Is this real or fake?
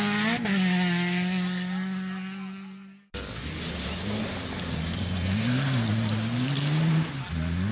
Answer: real